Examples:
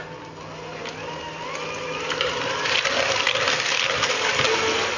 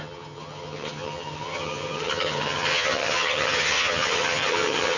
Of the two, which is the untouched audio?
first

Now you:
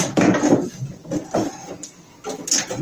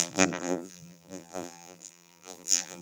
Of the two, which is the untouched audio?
first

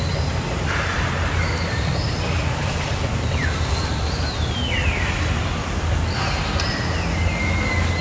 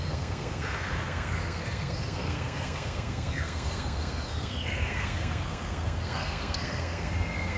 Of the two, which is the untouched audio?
first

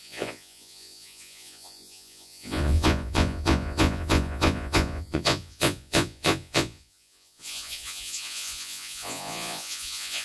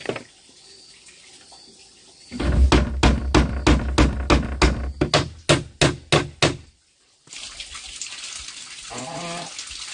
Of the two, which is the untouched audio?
second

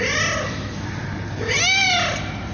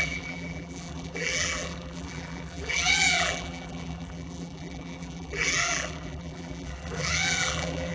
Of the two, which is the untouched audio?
first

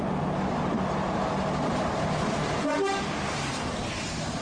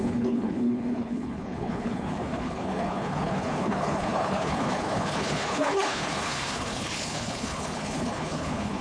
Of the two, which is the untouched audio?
first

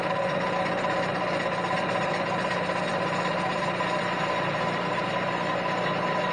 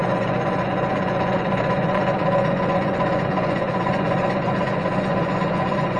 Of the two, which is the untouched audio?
first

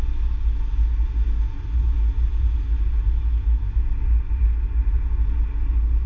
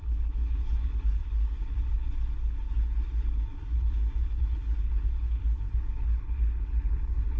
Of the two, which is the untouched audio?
first